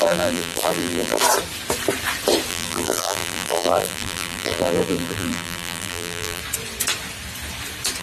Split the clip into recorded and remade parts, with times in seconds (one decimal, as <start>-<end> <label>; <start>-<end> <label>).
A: 0.0-1.2 remade; 1.2-2.5 recorded; 2.5-6.4 remade; 6.4-8.0 recorded